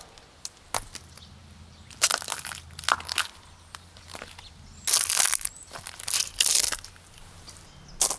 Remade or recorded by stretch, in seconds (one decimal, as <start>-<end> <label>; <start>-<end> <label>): 0.0-1.4 recorded; 1.4-2.2 remade; 2.2-8.2 recorded